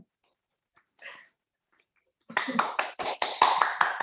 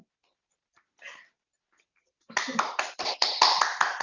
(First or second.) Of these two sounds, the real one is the second